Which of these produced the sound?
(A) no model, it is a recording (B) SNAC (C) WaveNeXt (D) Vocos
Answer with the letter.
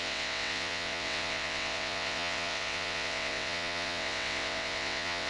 C